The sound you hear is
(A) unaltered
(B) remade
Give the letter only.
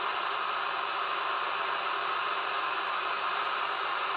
A